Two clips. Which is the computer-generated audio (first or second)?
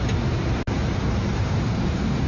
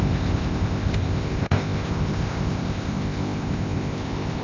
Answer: second